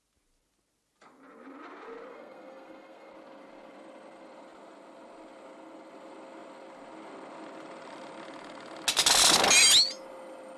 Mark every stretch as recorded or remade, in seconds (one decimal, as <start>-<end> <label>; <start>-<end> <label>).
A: 0.0-2.1 recorded; 2.1-3.1 remade; 3.1-10.6 recorded